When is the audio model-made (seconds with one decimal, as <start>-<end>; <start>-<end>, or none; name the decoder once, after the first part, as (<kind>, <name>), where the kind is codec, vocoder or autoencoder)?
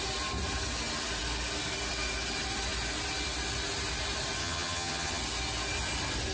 4.4-5.2 (vocoder, HiFi-GAN)